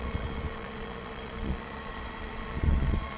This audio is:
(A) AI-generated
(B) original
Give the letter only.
A